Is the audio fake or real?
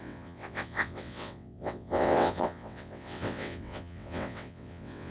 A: fake